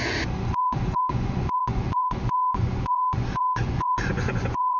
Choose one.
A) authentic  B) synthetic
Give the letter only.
B